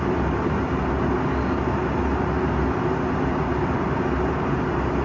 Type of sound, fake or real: real